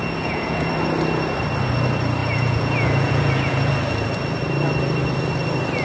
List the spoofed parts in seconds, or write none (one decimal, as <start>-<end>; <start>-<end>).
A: 0.0-0.7; 2.2-3.7